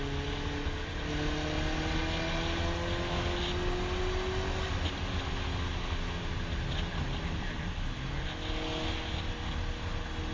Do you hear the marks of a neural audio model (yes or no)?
no